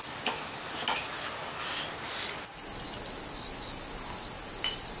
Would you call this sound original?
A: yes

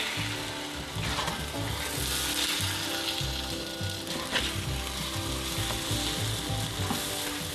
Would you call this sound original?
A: yes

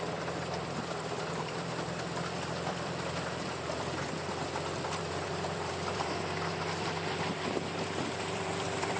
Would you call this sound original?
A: no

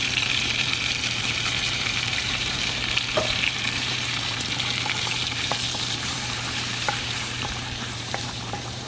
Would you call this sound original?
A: no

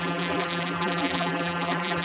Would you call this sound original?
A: no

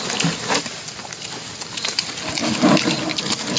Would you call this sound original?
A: yes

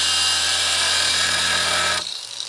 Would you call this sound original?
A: no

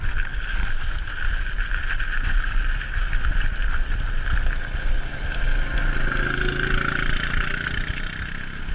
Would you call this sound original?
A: yes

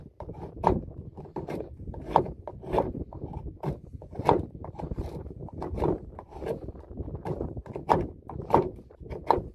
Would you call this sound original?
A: no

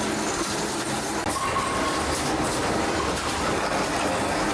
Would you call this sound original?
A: yes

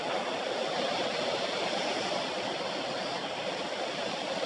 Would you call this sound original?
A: yes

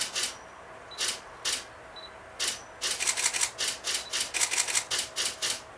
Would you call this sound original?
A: yes